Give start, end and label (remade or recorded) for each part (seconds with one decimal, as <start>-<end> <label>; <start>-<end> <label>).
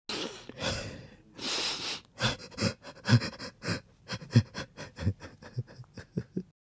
0.0-2.4 recorded; 2.4-3.2 remade; 3.2-6.7 recorded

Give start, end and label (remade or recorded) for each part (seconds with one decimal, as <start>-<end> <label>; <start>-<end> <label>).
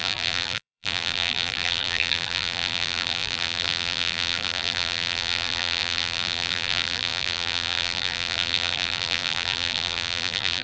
0.0-10.6 remade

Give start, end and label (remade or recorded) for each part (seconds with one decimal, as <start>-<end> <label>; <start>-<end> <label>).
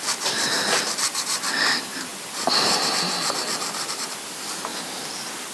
0.0-5.5 recorded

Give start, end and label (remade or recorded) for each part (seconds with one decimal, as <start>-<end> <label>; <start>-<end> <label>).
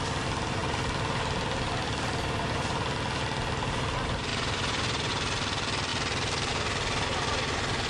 0.0-4.3 recorded; 4.3-5.1 remade; 5.1-7.9 recorded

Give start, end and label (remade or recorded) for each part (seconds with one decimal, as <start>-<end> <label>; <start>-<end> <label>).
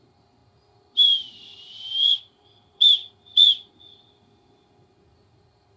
0.0-3.0 remade; 3.0-5.1 recorded; 5.1-5.8 remade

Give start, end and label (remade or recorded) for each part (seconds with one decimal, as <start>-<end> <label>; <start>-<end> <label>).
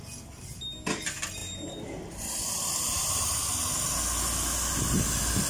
0.0-1.4 recorded; 1.4-3.7 remade; 3.7-5.5 recorded